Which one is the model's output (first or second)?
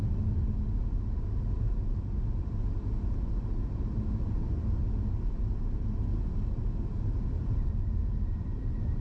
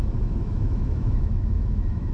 second